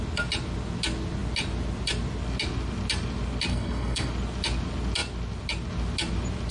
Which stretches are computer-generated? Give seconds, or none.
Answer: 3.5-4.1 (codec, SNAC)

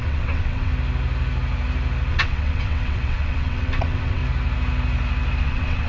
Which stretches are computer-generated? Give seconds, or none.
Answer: 0.0-0.7 (vocoder, WaveNeXt); 2.1-4.2; 5.4-5.9

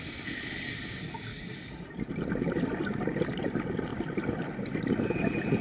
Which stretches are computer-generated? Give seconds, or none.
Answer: 1.3-1.9 (codec, DAC)